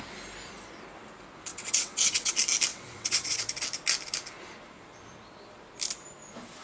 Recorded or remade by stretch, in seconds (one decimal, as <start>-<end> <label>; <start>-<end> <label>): 0.0-1.5 recorded; 1.5-2.3 remade; 2.3-2.7 recorded; 2.7-3.4 remade; 3.4-6.6 recorded

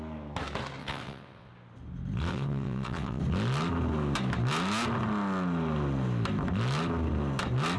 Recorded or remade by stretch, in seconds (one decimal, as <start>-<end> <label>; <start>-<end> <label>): 0.0-0.8 recorded; 0.8-1.5 remade; 1.5-2.3 recorded; 2.3-3.2 remade; 3.2-7.8 recorded